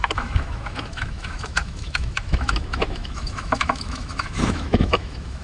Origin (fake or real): fake